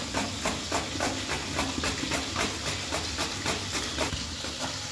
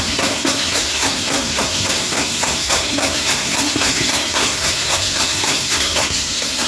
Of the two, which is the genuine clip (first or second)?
first